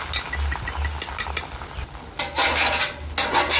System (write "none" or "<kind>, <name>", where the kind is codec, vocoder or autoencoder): none